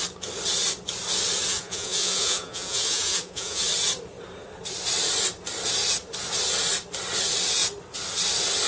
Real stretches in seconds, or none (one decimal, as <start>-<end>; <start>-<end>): 0.0-1.5; 3.6-8.7